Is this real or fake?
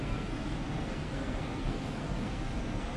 fake